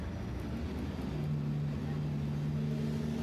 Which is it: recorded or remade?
recorded